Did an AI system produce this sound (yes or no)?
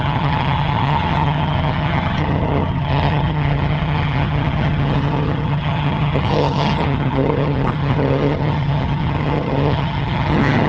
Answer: yes